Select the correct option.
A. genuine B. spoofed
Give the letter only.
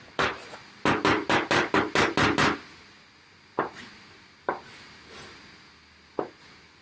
A